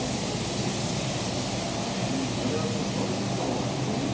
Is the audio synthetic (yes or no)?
no